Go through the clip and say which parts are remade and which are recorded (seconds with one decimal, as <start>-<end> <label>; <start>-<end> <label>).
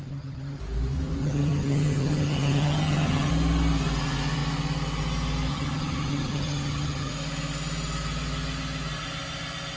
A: 0.0-0.6 remade; 0.6-1.2 recorded; 1.2-3.3 remade; 3.3-5.5 recorded; 5.5-7.1 remade; 7.1-9.8 recorded